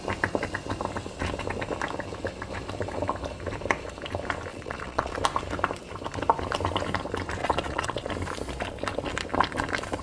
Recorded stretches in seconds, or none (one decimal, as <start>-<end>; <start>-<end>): 0.0-4.5; 5.1-7.4; 8.1-10.0

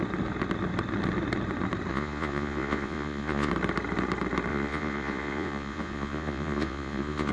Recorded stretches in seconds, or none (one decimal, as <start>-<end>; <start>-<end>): 0.0-1.9; 3.5-4.5

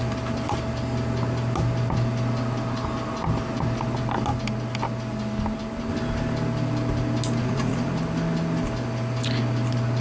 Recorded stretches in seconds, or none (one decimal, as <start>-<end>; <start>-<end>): 0.0-7.4; 8.0-10.0

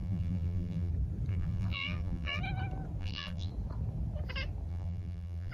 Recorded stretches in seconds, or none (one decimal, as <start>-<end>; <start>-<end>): 0.9-1.3; 2.4-3.0; 3.5-4.7